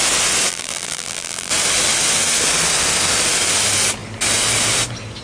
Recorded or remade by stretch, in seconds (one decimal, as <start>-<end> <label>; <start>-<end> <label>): 0.0-0.5 recorded; 0.5-1.5 remade; 1.5-5.2 recorded